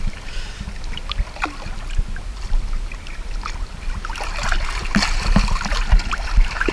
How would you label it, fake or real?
real